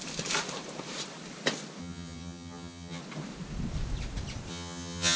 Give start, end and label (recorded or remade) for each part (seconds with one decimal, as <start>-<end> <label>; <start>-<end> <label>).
0.0-1.8 recorded; 1.8-3.0 remade; 3.0-4.5 recorded; 4.5-5.2 remade